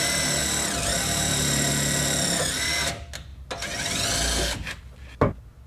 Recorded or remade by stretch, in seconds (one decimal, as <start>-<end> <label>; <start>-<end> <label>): 0.0-0.4 recorded; 0.4-1.7 remade; 1.7-5.7 recorded